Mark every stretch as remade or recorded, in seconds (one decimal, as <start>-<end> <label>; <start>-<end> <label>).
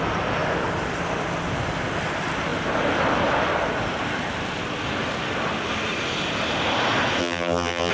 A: 0.0-7.2 recorded; 7.2-7.9 remade